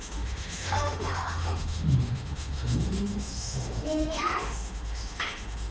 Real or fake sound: fake